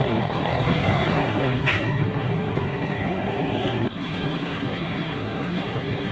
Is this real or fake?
fake